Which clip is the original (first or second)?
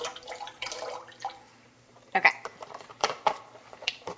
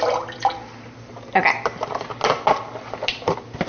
second